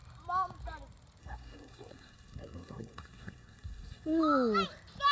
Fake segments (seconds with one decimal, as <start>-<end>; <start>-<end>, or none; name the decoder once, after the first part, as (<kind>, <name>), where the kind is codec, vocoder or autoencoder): 1.2-4.2 (codec, SNAC)